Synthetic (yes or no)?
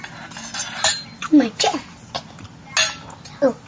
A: no